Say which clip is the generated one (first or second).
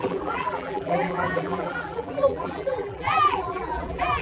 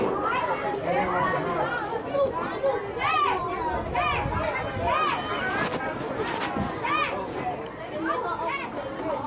first